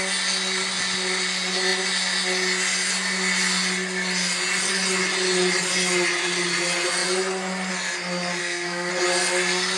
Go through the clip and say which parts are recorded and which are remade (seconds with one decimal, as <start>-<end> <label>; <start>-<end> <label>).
0.0-8.4 recorded; 8.4-8.9 remade; 8.9-9.8 recorded